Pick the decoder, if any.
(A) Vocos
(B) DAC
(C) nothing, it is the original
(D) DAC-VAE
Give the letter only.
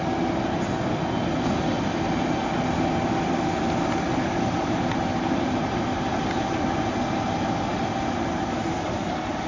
C